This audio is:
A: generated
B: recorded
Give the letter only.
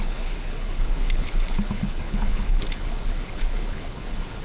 A